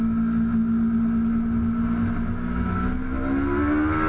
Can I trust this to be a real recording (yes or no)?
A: yes